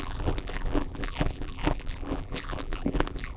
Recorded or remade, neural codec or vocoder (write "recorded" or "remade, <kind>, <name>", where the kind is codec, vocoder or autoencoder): remade, vocoder, BigVGAN v2